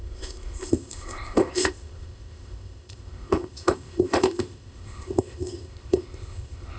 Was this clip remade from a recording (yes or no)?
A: yes